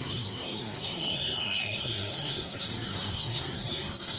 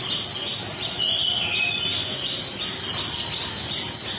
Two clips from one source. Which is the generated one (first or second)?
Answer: first